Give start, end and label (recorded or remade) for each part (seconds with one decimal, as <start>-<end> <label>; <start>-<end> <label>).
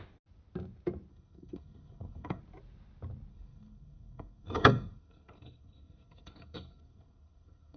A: 0.0-1.1 recorded; 1.1-2.4 remade; 2.4-3.3 recorded; 3.3-7.8 remade